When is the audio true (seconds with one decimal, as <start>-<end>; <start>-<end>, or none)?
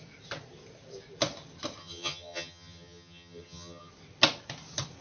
0.0-1.8; 3.9-5.0